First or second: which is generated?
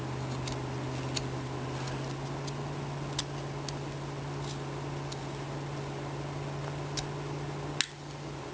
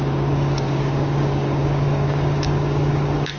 second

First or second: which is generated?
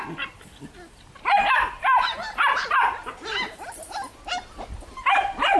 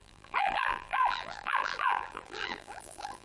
second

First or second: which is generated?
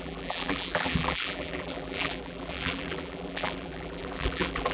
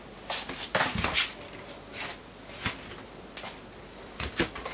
first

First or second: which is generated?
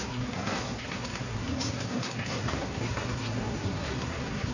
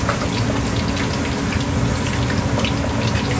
first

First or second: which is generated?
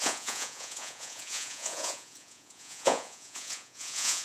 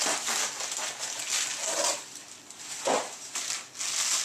first